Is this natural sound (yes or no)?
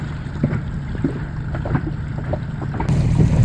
no